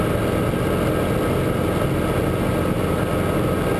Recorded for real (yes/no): yes